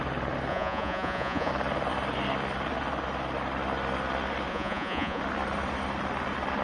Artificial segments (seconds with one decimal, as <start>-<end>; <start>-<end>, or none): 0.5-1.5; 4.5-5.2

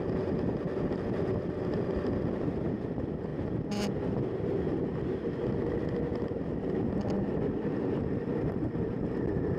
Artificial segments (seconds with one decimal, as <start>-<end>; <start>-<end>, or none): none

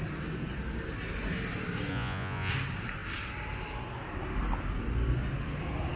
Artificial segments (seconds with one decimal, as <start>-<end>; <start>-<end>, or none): 1.9-2.5

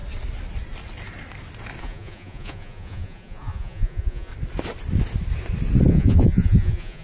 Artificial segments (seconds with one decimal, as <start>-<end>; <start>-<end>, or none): 1.8-4.3; 5.9-7.0